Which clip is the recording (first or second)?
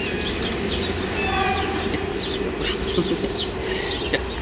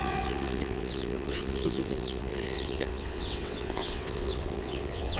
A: first